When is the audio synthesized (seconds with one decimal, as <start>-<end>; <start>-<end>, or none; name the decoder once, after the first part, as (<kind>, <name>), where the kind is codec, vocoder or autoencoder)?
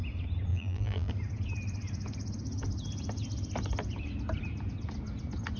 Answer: 0.5-1.1 (vocoder, BigVGAN v2)